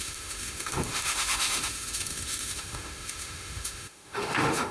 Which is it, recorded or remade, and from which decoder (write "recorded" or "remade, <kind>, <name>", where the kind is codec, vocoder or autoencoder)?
remade, autoencoder, DAC-VAE